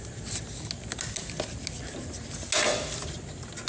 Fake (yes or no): no